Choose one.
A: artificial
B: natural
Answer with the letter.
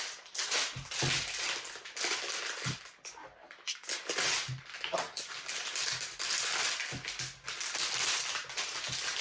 B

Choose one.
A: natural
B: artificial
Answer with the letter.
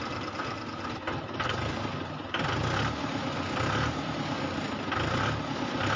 A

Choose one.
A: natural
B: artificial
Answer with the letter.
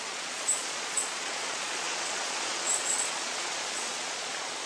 B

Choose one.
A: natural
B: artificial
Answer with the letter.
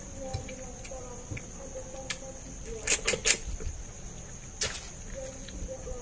A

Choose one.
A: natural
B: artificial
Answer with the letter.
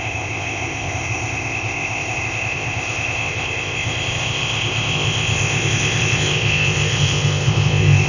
B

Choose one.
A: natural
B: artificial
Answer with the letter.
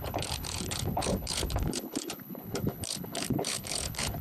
B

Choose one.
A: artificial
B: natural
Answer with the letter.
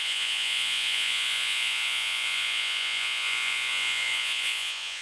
A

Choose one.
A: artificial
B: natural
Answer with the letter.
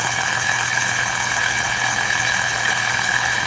A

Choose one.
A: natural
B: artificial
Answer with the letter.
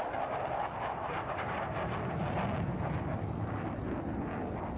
A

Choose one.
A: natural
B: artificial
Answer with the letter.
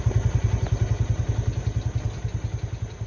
A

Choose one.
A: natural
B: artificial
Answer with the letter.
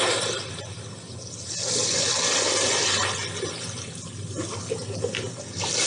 A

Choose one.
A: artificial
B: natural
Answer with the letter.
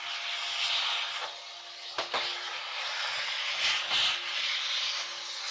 B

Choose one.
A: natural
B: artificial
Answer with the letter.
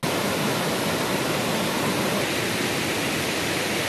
A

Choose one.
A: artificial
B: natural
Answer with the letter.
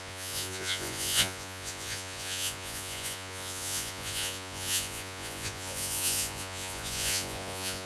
A